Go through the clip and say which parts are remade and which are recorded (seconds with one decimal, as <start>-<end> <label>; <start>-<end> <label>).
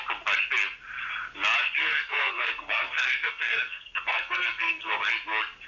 0.0-1.8 recorded; 1.8-5.1 remade; 5.1-5.7 recorded